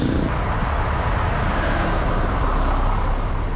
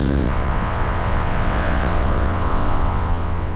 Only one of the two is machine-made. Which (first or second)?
second